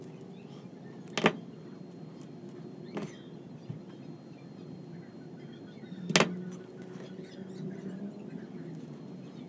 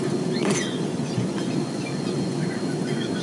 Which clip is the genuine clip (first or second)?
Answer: first